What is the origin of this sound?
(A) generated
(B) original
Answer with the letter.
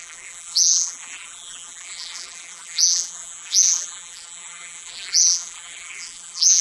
A